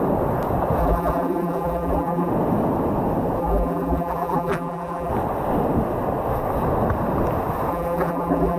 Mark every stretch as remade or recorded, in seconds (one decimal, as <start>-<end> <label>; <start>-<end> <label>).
0.0-0.8 recorded; 0.8-2.3 remade; 2.3-3.4 recorded; 3.4-5.1 remade; 5.1-7.7 recorded; 7.7-8.6 remade